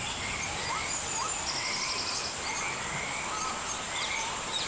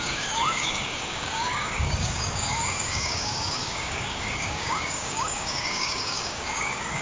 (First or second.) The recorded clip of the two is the first